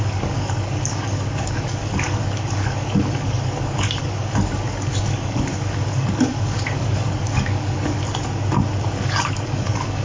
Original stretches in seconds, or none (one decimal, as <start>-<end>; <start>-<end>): 8.0-8.8